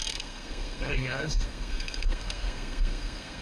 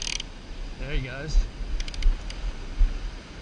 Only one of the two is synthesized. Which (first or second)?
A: first